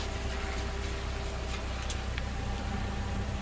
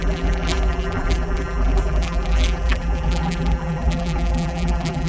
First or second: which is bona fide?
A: first